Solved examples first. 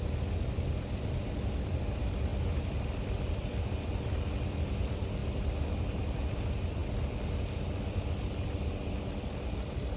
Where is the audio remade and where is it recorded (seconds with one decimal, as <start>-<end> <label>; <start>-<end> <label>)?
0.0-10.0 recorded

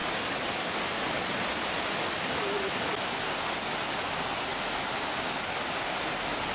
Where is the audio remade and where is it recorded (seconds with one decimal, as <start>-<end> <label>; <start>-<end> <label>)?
0.0-6.5 recorded

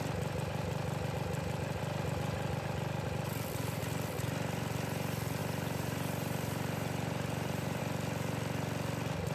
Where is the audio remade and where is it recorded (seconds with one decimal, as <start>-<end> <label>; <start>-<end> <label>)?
0.0-5.4 recorded; 5.4-7.8 remade; 7.8-9.3 recorded

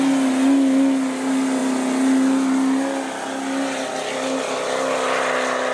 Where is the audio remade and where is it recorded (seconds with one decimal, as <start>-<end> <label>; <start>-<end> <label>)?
0.0-5.7 recorded